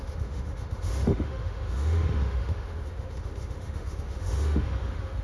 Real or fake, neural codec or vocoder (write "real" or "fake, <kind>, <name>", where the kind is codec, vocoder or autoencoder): fake, autoencoder, DAC-VAE